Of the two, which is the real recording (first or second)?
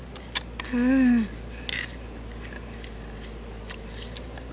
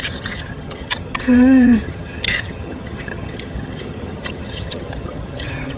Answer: first